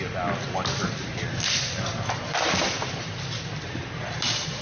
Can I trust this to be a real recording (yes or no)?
yes